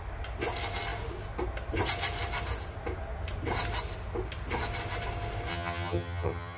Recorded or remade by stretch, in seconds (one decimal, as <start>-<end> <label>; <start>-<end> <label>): 0.0-5.5 recorded; 5.5-6.6 remade